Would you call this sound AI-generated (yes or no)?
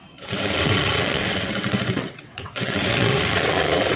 yes